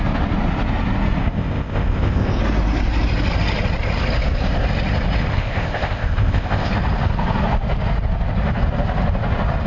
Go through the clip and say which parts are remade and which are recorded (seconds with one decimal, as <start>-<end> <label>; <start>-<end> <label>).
0.0-1.2 recorded; 1.2-2.4 remade; 2.4-5.3 recorded; 5.3-6.7 remade; 6.7-9.7 recorded